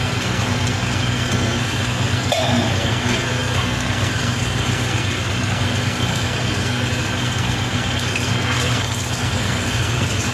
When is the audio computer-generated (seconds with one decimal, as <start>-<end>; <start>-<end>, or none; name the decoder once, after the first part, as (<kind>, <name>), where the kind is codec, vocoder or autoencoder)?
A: 0.0-10.3 (codec, SNAC)